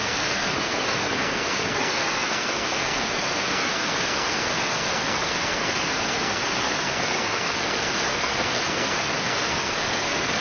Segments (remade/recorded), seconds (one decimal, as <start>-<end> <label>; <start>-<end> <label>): 0.0-10.4 remade